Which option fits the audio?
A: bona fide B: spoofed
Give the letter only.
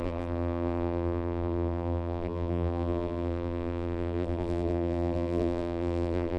B